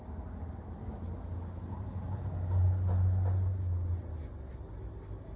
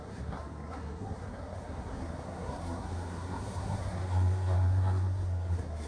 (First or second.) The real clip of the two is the first